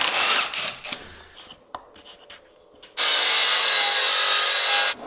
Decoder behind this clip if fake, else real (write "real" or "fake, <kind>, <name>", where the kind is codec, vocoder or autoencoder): real